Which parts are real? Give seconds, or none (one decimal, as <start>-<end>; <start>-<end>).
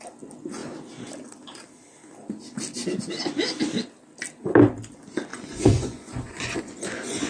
0.0-5.3